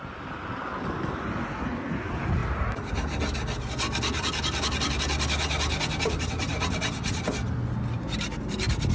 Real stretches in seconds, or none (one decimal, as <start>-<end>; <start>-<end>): 0.0-8.9